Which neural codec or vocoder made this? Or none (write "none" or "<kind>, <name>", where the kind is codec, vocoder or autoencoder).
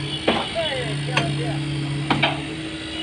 none